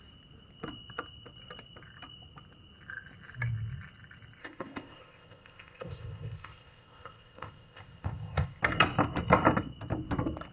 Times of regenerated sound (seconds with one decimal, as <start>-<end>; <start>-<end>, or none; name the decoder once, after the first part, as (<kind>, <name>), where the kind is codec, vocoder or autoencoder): 4.4-8.6 (codec, ZipCodec)

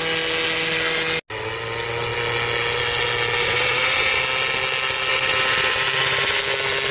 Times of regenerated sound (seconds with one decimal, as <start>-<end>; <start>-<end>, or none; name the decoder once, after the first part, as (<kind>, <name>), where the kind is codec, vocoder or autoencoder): 3.4-4.2 (vocoder, BigVGAN v2); 5.1-6.4

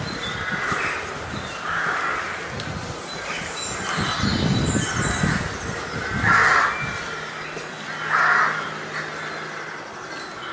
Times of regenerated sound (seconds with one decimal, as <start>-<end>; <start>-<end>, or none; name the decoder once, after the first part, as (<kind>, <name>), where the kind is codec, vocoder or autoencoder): none

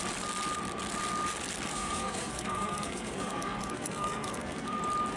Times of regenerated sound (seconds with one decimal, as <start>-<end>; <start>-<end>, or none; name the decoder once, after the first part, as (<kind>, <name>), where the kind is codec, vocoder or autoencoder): 1.7-4.8 (codec, SNAC)